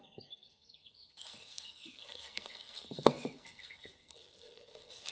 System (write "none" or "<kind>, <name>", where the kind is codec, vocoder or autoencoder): codec, SNAC